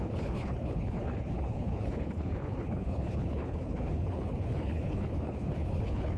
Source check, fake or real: fake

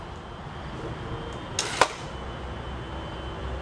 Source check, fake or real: real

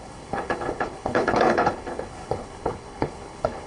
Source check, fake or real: fake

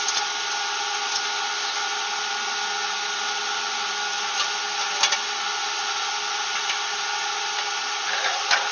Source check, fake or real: real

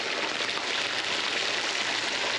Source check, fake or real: real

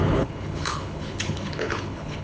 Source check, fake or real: fake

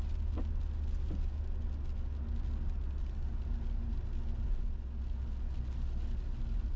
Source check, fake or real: real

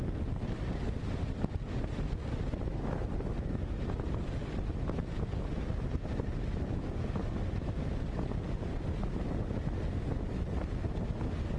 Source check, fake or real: real